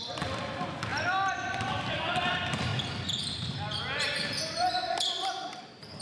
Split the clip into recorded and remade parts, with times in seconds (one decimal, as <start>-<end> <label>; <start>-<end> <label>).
0.0-2.7 remade; 2.7-4.4 recorded; 4.4-6.0 remade